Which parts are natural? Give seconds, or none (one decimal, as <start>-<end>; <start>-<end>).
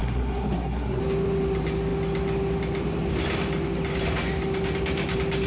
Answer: 1.0-5.5